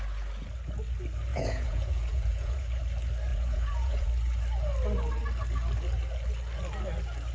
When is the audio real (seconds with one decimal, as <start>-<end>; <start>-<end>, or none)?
0.0-1.3; 2.8-3.3; 4.1-7.3